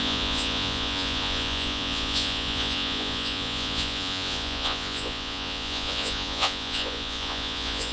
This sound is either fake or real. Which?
fake